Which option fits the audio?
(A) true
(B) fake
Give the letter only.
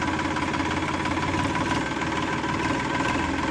A